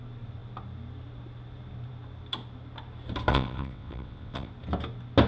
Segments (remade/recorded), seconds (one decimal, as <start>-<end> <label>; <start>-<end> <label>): 0.0-3.3 recorded; 3.3-4.5 remade; 4.5-5.3 recorded